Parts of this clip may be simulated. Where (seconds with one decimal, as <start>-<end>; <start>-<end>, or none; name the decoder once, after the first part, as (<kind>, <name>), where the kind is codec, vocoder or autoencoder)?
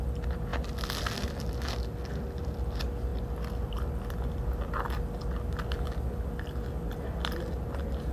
none